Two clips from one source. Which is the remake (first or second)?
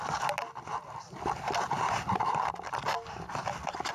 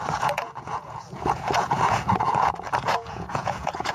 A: second